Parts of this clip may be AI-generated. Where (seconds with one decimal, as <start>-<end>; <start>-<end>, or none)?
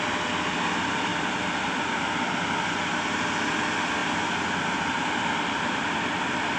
1.1-1.8; 4.0-6.1